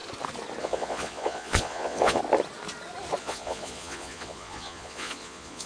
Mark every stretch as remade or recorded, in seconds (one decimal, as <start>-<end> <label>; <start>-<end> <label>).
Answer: 0.0-0.6 recorded; 0.6-2.2 remade; 2.2-3.2 recorded; 3.2-5.7 remade